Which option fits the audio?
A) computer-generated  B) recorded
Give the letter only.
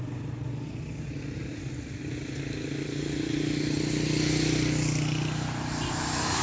B